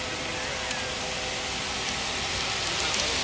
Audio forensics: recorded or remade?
recorded